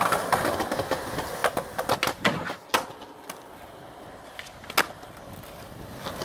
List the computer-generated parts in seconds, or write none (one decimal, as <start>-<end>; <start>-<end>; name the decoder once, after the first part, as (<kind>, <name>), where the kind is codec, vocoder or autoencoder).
none